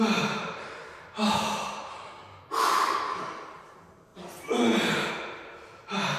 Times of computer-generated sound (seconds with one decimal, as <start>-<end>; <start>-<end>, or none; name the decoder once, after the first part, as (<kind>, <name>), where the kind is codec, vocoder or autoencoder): 0.0-2.2 (vocoder, BigVGAN v2); 3.5-4.1; 5.1-6.2